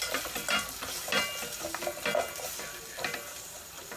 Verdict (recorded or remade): recorded